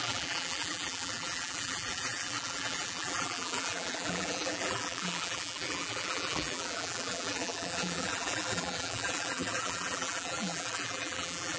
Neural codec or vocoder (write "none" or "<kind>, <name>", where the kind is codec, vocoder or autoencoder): vocoder, BigVGAN v2